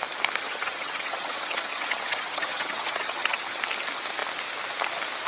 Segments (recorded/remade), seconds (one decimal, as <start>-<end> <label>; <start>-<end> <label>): 0.0-0.4 recorded; 0.4-3.6 remade; 3.6-5.3 recorded